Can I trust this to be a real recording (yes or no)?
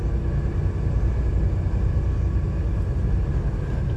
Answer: yes